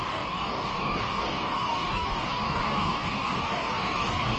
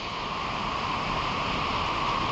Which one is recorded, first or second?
second